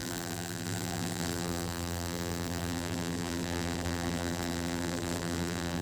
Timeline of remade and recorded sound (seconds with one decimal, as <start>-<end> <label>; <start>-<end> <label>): 0.0-5.8 remade